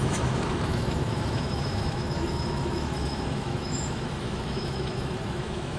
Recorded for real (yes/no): no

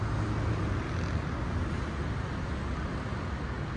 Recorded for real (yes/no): yes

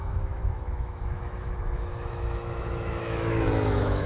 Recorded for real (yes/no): no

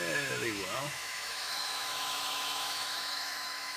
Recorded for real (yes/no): no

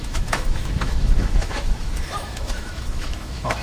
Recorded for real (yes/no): no